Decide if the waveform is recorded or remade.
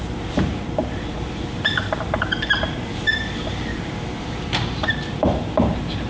remade